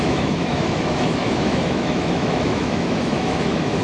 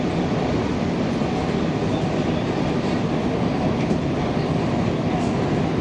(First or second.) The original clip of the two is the second